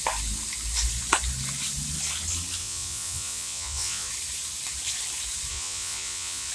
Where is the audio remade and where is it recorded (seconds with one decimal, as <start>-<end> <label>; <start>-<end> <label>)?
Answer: 0.0-2.6 recorded; 2.6-4.1 remade; 4.1-5.5 recorded; 5.5-6.5 remade